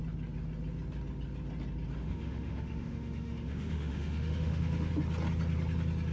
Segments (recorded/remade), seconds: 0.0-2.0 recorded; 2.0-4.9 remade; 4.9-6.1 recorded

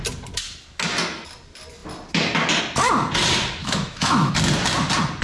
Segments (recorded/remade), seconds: 0.0-3.6 recorded; 3.6-4.3 remade; 4.3-5.2 recorded